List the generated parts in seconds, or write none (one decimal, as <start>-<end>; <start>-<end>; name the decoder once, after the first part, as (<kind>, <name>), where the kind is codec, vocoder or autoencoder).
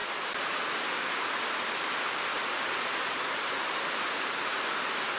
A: 2.3-4.3 (vocoder, BigVGAN v2)